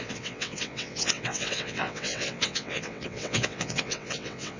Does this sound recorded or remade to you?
remade